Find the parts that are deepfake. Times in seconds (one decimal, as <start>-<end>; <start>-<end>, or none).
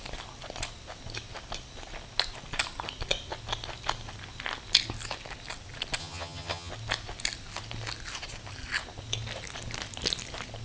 6.0-6.7